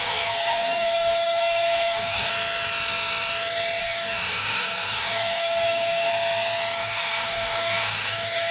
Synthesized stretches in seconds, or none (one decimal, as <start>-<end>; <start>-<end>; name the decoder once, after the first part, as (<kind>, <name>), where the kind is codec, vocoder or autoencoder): 0.0-2.3 (codec, DAC); 3.8-6.1; 6.8-8.5

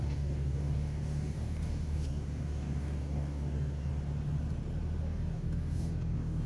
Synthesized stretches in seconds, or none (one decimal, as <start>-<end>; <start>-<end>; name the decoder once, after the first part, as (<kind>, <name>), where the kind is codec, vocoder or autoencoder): 0.0-3.9 (codec, DAC); 5.0-6.5

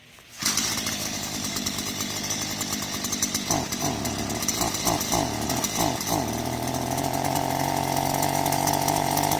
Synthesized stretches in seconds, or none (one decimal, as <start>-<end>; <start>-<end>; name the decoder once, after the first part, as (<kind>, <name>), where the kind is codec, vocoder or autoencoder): 1.0-1.8 (codec, DAC)

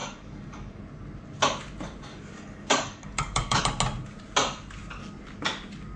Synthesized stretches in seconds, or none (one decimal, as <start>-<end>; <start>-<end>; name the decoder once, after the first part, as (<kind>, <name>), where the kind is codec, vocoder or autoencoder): 0.0-0.8 (codec, DAC); 2.1-3.6